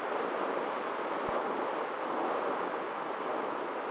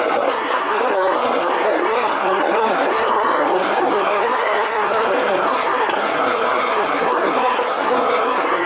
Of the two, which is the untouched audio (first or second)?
first